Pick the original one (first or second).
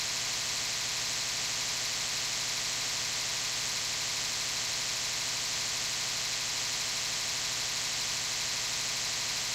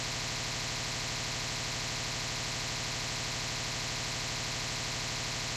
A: second